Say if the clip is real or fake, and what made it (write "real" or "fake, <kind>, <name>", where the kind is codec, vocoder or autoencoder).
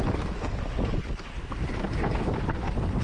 real